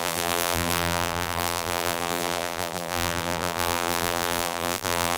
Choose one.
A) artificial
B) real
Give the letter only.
A